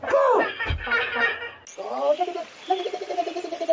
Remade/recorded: recorded